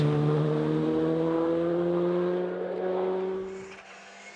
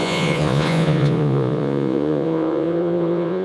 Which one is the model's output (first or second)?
second